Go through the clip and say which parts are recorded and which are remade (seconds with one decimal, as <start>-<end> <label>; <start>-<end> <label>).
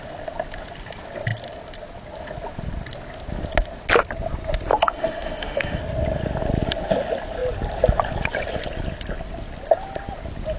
0.0-4.7 recorded; 4.7-5.8 remade; 5.8-10.6 recorded